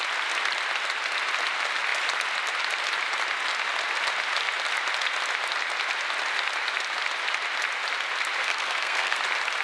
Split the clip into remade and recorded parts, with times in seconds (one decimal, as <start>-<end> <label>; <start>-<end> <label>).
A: 0.0-8.4 recorded; 8.4-9.2 remade; 9.2-9.6 recorded